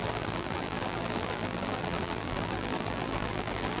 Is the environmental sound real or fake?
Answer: fake